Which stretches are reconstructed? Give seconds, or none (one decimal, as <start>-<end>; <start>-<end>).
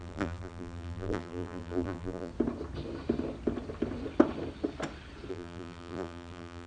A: 0.0-2.3; 5.3-6.7